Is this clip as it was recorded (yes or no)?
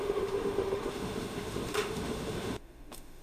no